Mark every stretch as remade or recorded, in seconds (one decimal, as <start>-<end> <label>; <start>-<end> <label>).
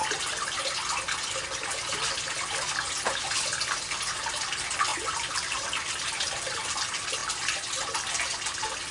0.0-4.9 recorded; 4.9-6.7 remade; 6.7-8.9 recorded